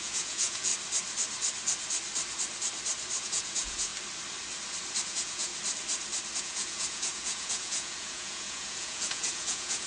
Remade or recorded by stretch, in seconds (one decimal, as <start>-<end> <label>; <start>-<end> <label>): 0.0-0.7 remade; 0.7-3.2 recorded; 3.2-3.9 remade; 3.9-5.1 recorded; 5.1-5.5 remade; 5.5-6.4 recorded; 6.4-9.9 remade